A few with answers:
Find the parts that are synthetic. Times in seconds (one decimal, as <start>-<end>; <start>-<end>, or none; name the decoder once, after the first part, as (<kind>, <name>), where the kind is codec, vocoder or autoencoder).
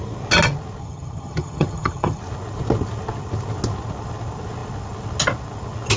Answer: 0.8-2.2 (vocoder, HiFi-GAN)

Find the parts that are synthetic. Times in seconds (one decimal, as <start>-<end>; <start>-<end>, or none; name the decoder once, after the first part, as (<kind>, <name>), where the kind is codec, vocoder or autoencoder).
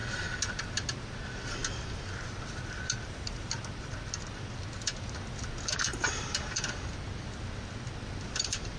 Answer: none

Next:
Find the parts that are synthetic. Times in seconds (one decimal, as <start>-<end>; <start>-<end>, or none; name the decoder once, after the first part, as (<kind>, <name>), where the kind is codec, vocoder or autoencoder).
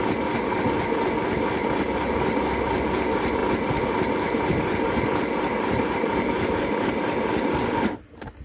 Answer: none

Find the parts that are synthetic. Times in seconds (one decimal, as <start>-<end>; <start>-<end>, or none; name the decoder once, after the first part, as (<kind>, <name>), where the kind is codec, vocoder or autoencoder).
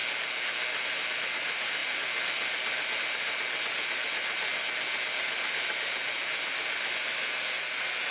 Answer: none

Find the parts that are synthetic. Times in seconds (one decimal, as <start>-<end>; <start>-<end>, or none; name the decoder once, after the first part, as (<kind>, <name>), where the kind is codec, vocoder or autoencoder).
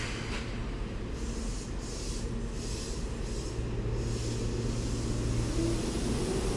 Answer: none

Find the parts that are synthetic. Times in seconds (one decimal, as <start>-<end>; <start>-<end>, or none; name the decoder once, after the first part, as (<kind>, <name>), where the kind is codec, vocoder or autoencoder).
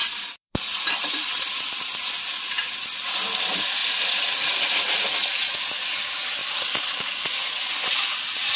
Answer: 0.0-2.0 (vocoder, BigVGAN v2); 3.8-4.5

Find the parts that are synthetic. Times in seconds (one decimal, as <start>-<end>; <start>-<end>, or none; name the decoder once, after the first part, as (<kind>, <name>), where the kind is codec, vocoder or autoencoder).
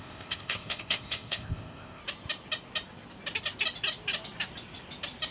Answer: 0.0-2.0 (codec, ZipCodec)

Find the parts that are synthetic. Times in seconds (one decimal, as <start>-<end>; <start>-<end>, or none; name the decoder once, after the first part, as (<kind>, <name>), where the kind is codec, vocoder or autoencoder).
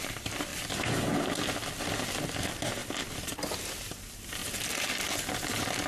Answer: 0.0-0.5 (vocoder, BigVGAN v2); 2.3-2.8; 3.3-4.4; 5.1-5.9